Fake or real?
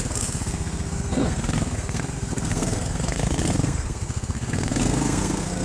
fake